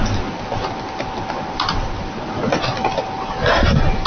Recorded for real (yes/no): yes